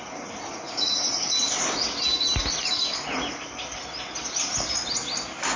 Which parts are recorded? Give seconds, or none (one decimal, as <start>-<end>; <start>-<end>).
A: 0.0-5.6